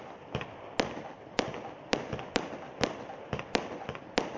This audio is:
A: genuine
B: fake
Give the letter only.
A